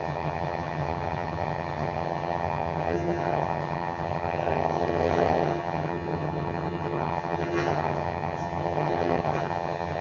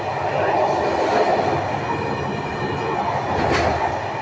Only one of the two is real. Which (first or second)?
second